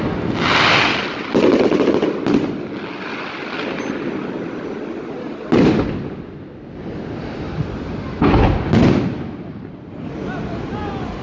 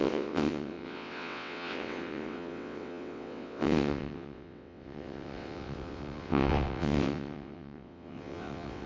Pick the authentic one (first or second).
first